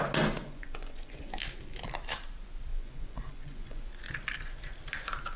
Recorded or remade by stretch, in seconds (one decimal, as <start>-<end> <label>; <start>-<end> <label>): 0.0-0.4 recorded; 0.4-1.3 remade; 1.3-2.7 recorded; 2.7-3.8 remade; 3.8-5.4 recorded